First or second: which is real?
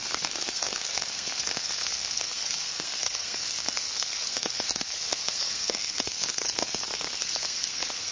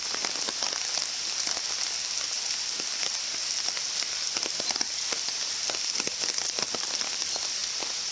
second